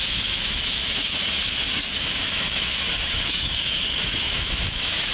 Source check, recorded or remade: remade